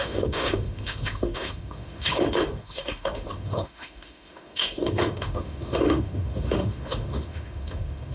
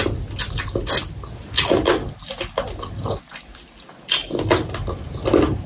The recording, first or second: second